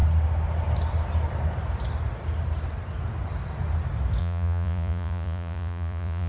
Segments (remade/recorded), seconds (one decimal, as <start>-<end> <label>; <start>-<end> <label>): 0.0-4.2 recorded; 4.2-6.3 remade